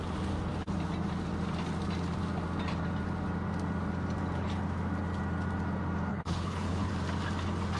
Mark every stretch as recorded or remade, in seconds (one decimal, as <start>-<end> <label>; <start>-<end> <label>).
0.0-6.1 recorded; 6.1-6.9 remade; 6.9-7.8 recorded